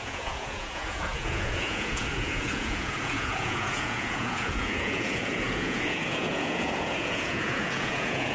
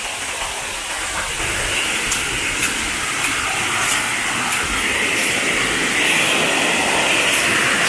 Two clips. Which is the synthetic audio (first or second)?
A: first